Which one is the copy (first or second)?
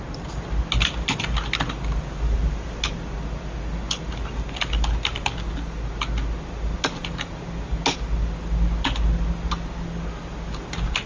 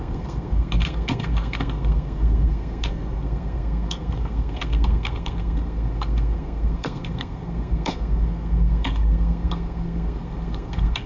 second